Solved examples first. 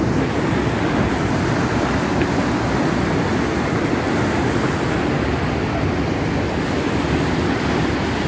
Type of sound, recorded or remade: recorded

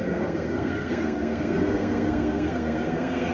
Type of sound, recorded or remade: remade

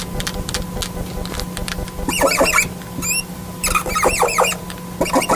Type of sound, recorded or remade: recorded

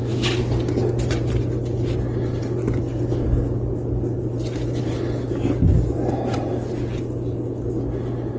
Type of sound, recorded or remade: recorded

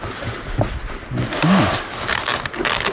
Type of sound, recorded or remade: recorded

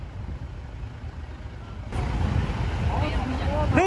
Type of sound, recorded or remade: recorded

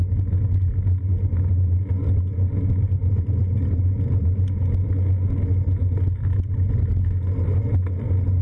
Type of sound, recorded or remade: recorded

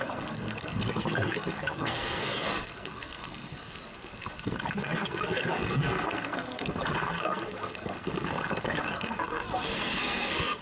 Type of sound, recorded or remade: remade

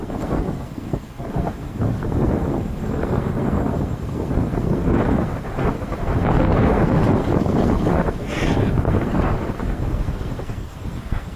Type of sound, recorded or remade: remade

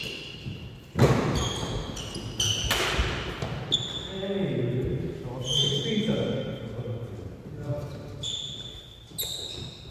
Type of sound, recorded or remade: recorded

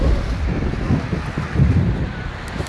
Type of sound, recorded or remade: recorded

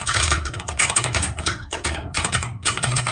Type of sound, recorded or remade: remade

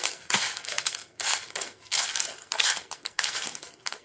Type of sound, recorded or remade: remade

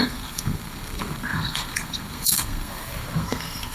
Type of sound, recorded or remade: remade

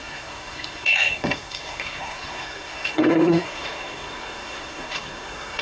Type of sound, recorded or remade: remade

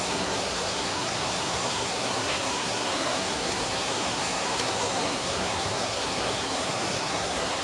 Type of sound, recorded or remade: remade